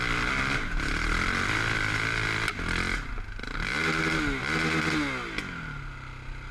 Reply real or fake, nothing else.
real